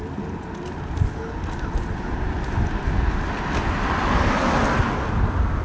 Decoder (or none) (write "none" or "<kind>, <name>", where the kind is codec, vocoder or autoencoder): none